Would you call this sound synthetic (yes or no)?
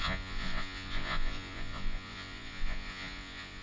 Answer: yes